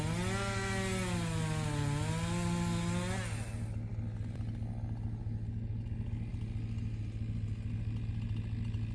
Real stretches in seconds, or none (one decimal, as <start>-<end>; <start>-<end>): 0.0-8.9